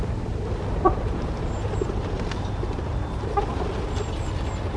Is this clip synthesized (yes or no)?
no